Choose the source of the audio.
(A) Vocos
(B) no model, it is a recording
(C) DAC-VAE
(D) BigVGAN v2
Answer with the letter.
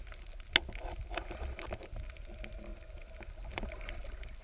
B